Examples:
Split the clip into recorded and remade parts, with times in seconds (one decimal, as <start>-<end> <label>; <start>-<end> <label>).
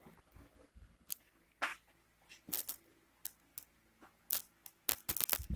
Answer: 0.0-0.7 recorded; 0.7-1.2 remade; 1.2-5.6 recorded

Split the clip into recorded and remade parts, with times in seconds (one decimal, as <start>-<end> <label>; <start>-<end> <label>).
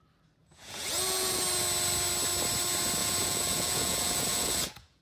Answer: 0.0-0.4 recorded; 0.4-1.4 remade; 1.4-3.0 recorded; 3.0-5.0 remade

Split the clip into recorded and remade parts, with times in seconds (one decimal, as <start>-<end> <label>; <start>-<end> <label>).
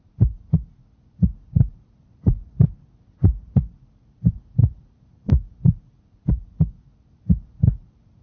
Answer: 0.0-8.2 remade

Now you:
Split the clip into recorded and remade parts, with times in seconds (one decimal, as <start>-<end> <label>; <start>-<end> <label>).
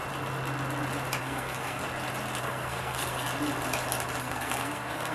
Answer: 0.0-1.2 recorded; 1.2-1.8 remade; 1.8-2.4 recorded; 2.4-3.3 remade; 3.3-4.2 recorded; 4.2-5.1 remade